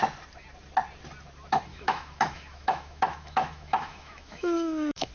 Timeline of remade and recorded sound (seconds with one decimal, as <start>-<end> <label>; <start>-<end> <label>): 0.0-1.7 recorded; 1.7-5.1 remade